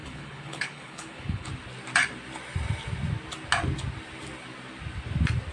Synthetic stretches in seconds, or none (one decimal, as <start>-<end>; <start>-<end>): 0.0-1.5